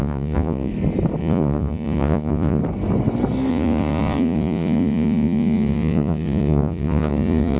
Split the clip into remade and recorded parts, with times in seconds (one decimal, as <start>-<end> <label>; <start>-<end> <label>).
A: 0.0-0.7 remade; 0.7-1.2 recorded; 1.2-2.6 remade; 2.6-3.5 recorded; 3.5-7.6 remade